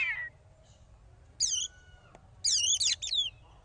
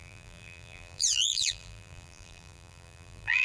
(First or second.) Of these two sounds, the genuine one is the first